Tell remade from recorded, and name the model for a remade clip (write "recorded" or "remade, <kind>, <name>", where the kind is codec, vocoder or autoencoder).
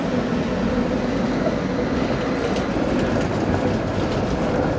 recorded